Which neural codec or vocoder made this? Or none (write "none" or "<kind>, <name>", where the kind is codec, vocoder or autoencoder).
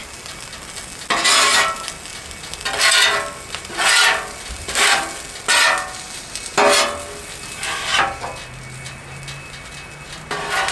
none